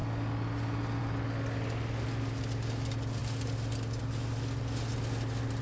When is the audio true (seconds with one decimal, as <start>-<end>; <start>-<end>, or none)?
0.0-5.6